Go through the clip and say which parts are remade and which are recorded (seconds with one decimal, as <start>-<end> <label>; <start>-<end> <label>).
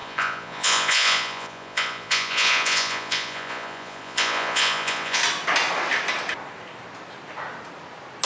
0.0-5.2 remade; 5.2-8.3 recorded